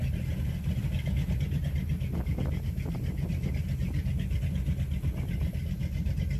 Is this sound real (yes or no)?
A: yes